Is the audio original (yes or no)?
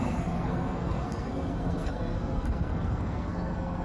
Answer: no